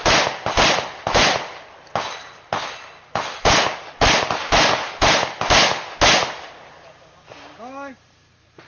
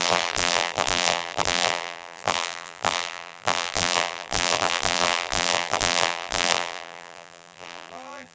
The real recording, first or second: first